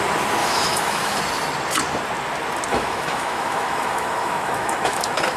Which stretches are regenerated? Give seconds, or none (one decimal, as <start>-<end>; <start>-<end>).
0.4-1.2; 2.7-5.4